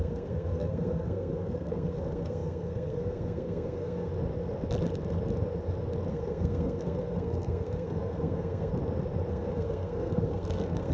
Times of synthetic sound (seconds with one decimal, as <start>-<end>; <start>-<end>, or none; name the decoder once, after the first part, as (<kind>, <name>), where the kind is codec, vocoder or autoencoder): 0.0-4.1 (codec, SNAC); 6.1-8.7; 9.3-10.9